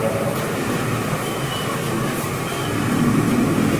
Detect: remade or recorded recorded